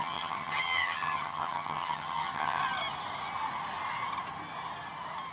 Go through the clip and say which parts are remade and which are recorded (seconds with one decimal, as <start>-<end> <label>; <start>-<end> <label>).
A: 0.0-2.6 remade; 2.6-5.3 recorded